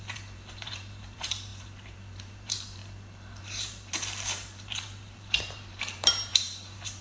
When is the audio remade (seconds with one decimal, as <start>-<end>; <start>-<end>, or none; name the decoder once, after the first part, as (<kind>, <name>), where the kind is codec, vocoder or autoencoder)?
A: 0.0-2.8 (vocoder, BigVGAN v2); 3.4-7.0